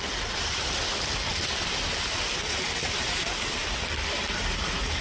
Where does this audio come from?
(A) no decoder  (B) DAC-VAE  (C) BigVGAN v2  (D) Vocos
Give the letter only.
A